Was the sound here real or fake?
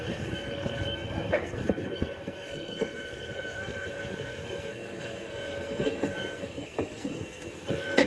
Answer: fake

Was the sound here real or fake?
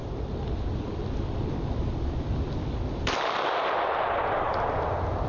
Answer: real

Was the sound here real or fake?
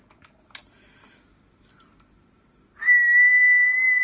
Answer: real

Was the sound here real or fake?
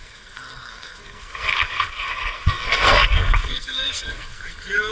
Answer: fake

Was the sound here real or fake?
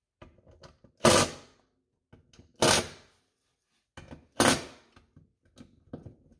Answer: real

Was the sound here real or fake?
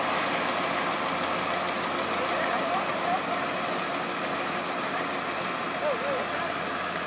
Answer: real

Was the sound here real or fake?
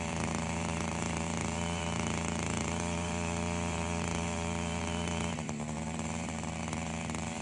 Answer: fake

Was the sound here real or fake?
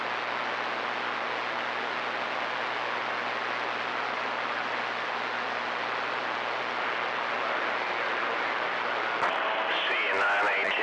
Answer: real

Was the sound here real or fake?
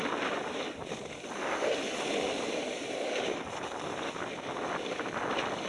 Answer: real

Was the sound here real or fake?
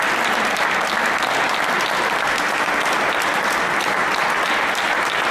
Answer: real